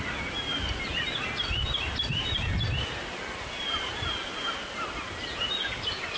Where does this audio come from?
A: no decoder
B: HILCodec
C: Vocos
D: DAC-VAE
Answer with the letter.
A